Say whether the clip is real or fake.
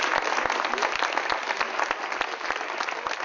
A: real